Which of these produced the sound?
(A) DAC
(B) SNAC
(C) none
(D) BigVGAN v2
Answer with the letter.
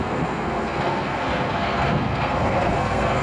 B